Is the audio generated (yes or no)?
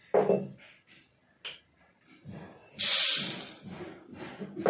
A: no